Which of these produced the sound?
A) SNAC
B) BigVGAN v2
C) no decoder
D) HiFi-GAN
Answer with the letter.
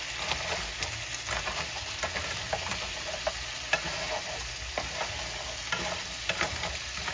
C